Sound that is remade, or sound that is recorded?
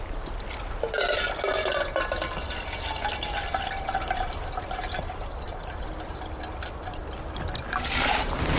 recorded